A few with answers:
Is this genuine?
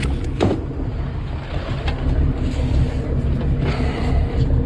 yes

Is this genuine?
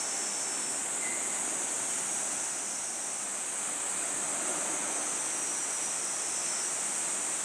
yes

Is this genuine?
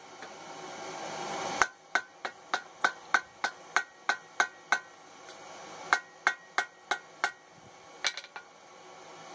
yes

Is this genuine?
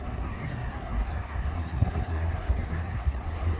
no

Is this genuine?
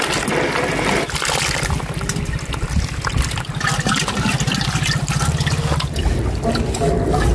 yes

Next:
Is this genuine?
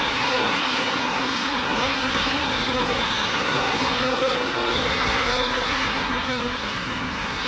no